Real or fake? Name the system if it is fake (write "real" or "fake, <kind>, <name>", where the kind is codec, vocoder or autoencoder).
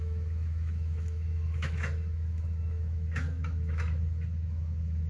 fake, autoencoder, DAC-VAE